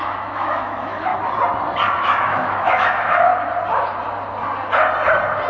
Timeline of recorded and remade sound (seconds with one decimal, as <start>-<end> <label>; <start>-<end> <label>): 0.0-1.1 remade; 1.1-2.0 recorded; 2.0-3.3 remade; 3.3-5.5 recorded